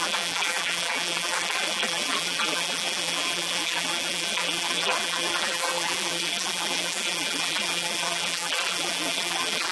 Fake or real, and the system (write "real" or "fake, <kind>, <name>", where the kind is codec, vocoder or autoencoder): fake, vocoder, BigVGAN v2